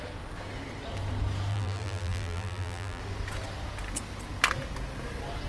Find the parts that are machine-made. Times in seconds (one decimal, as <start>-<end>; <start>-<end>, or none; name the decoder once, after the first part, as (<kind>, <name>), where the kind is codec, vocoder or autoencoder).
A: 1.5-3.0 (vocoder, BigVGAN v2)